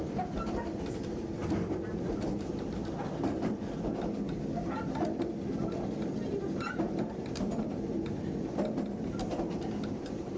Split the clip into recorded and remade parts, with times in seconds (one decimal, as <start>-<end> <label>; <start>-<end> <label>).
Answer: 0.0-10.4 recorded